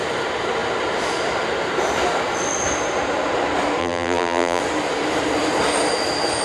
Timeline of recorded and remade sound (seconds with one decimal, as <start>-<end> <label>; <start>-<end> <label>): 0.0-3.8 recorded; 3.8-4.6 remade; 4.6-6.4 recorded

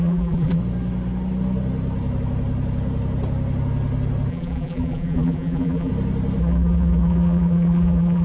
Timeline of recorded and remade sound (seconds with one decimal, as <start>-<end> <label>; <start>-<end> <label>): 0.0-0.6 remade; 0.6-4.3 recorded; 4.3-5.9 remade; 5.9-6.4 recorded; 6.4-8.2 remade

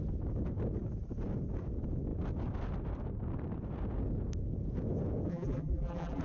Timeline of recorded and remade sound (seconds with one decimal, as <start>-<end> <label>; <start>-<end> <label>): 0.0-5.3 recorded; 5.3-6.2 remade

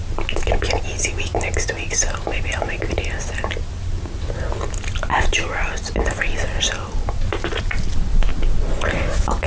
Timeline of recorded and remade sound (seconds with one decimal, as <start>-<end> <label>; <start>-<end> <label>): 0.0-2.5 recorded; 2.5-3.0 remade; 3.0-9.5 recorded